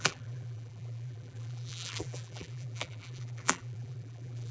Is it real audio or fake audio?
fake